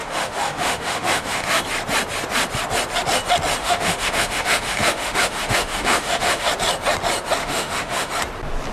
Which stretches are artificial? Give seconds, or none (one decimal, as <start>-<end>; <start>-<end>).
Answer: 0.0-1.6; 3.6-6.5; 7.4-8.1